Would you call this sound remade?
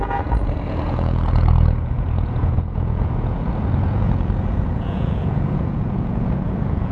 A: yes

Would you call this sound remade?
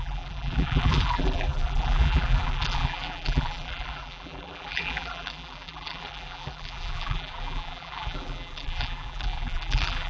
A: yes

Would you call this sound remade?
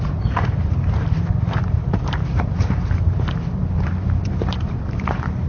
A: yes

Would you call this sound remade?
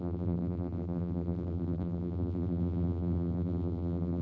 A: yes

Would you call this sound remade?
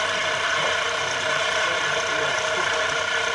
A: no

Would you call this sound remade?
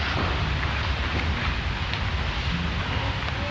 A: no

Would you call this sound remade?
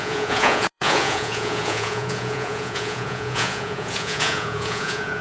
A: yes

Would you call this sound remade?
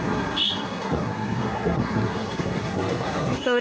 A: yes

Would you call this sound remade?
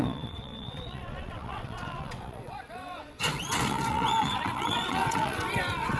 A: yes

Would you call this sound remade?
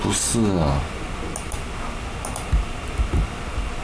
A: no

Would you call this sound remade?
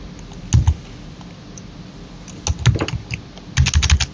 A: no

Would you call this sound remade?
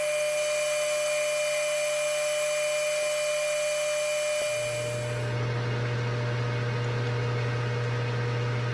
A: no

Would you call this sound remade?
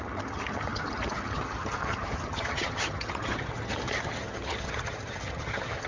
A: yes